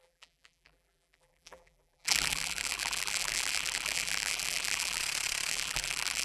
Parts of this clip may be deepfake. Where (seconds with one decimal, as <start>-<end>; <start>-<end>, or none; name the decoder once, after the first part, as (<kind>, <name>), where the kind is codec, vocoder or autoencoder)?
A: 0.0-5.0 (vocoder, BigVGAN v2); 5.5-6.2

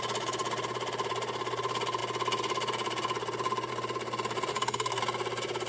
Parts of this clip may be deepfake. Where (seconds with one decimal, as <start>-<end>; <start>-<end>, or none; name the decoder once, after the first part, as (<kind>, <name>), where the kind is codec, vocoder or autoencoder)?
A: 4.5-5.0 (codec, SNAC)

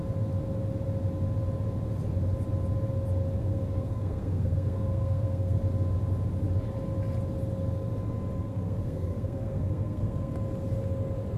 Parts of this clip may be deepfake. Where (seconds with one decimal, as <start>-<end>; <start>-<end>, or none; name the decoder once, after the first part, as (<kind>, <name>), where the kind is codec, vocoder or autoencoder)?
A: 3.4-5.6 (codec, SNAC); 8.4-10.3

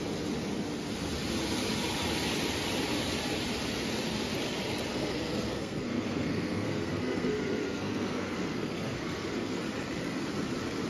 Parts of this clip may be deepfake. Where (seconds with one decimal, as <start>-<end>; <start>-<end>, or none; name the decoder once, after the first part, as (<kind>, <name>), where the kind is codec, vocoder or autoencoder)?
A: 4.9-9.6 (codec, SNAC)

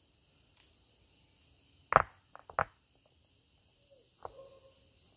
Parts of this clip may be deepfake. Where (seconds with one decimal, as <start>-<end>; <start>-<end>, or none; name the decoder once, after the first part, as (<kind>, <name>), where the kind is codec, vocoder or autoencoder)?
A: none

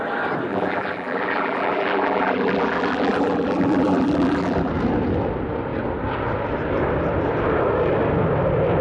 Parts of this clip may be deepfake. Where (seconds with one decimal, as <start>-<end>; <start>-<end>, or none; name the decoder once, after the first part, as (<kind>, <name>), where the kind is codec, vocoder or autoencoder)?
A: 0.5-4.7 (vocoder, BigVGAN v2)